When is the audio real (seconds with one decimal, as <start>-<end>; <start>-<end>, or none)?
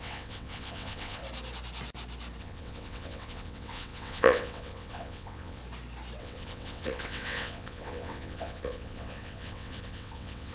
1.2-2.4; 5.6-6.2